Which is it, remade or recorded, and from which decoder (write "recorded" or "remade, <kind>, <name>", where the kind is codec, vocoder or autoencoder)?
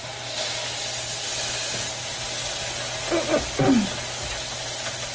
recorded